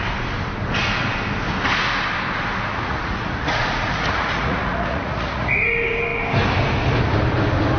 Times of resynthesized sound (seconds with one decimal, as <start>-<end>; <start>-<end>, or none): 2.7-5.5